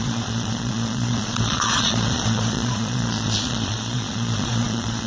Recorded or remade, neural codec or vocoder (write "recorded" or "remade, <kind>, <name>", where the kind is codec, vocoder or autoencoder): remade, vocoder, Vocos